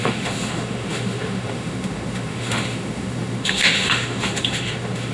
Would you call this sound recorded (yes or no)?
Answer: no